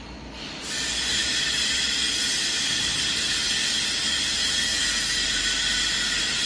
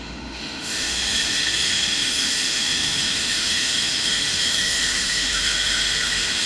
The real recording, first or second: first